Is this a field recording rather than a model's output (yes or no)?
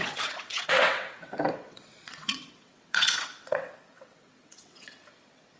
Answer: no